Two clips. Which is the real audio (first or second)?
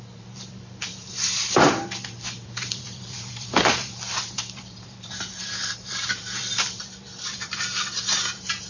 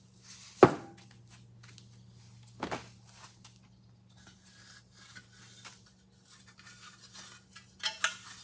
second